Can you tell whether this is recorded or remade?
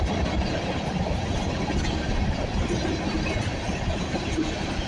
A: recorded